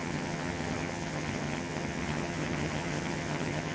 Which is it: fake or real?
fake